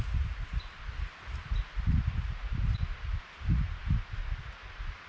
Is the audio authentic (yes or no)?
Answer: yes